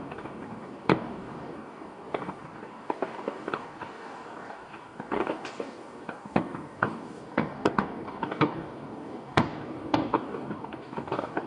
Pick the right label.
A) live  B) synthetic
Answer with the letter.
B